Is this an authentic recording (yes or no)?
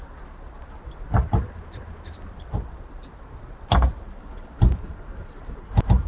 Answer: yes